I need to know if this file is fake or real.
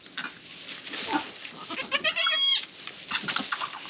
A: real